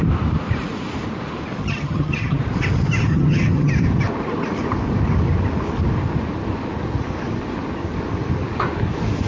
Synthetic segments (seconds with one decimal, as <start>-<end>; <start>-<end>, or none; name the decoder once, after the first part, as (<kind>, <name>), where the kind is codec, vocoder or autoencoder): 1.6-2.4 (vocoder, HiFi-GAN); 3.1-3.7